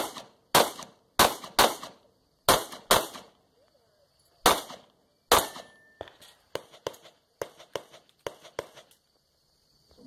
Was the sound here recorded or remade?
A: recorded